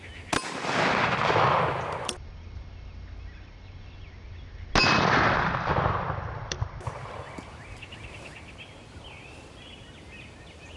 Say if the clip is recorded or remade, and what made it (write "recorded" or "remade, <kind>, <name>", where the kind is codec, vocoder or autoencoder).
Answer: recorded